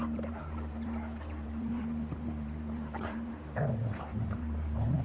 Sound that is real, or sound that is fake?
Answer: fake